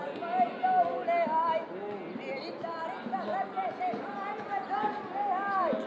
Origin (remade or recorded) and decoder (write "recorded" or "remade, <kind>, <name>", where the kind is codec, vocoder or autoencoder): recorded